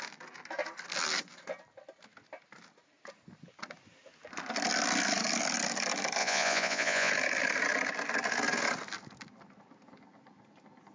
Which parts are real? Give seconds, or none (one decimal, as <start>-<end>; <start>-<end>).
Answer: 0.0-6.2; 7.1-10.9